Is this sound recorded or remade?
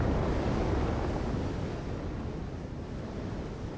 recorded